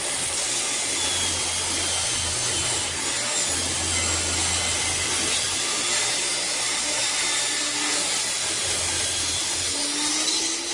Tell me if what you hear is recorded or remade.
recorded